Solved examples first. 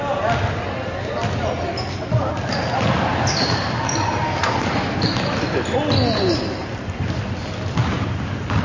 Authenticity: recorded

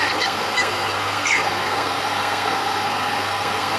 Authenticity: remade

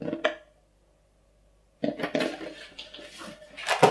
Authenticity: recorded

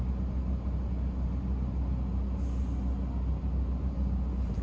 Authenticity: recorded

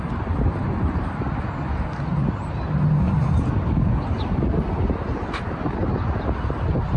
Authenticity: recorded